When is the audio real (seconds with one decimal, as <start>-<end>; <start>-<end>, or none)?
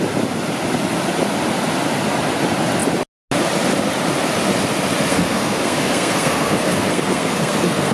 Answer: 0.0-5.1